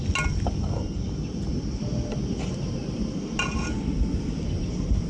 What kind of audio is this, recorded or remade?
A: recorded